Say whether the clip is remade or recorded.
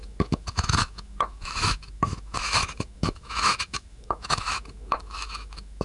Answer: remade